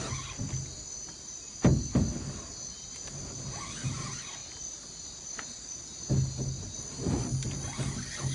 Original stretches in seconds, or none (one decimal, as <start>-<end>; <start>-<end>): 0.0-8.3